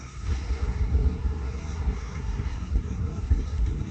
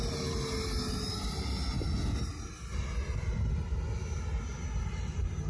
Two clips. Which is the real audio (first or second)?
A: second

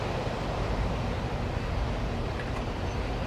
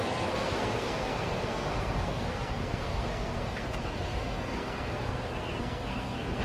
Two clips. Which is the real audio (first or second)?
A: first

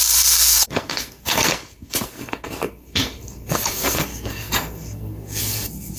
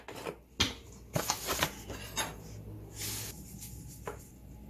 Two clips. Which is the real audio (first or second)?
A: second